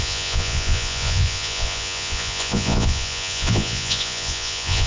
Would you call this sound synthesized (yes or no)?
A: yes